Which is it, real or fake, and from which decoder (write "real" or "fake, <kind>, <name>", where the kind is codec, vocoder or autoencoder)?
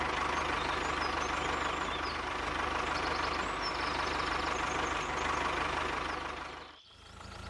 real